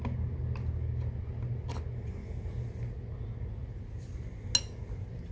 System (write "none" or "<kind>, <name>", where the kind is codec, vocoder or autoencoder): none